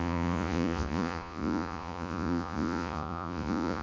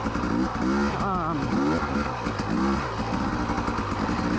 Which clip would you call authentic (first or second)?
second